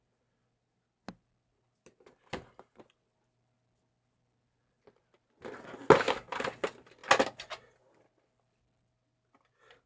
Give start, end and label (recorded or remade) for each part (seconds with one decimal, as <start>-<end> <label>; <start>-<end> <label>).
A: 0.0-9.9 recorded